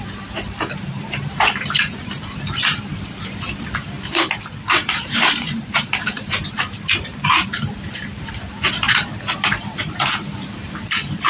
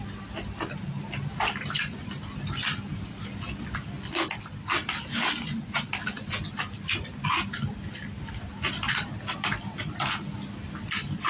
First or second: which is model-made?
first